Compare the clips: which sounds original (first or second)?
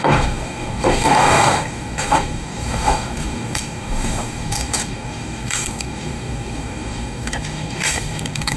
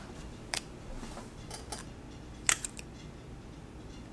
second